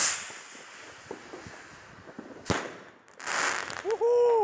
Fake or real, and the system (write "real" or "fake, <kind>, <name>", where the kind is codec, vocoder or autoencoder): real